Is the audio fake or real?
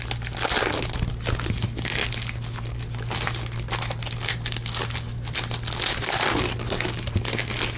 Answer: real